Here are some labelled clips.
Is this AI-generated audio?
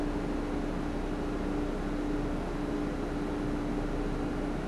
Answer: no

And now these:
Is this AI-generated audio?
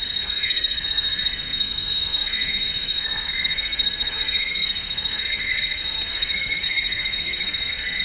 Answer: yes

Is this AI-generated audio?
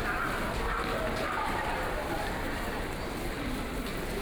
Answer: no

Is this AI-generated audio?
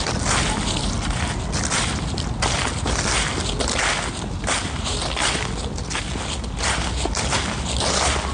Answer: no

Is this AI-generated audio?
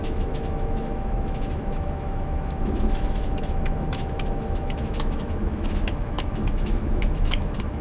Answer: yes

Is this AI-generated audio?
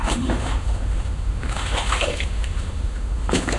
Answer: yes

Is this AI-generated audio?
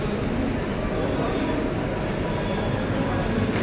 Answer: no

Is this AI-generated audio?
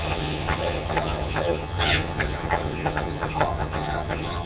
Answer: yes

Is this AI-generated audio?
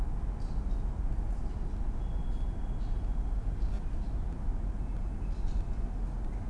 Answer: no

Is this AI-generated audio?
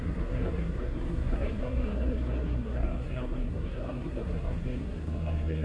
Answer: yes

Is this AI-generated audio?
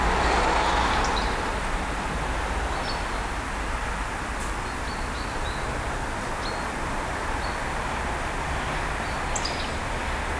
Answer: no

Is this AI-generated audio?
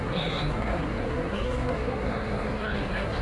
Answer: yes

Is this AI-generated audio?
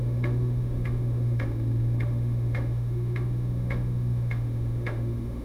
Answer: yes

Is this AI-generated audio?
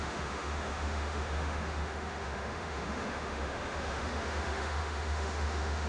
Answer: yes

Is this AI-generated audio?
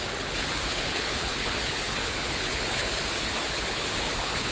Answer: yes